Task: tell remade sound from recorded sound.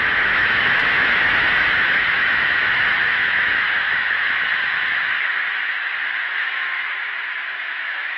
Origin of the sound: remade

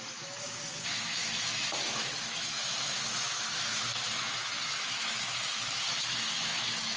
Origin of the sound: remade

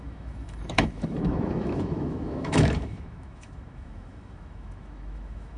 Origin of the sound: remade